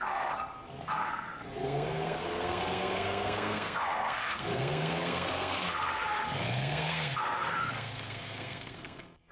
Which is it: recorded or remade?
remade